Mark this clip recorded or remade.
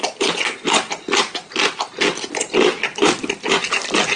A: recorded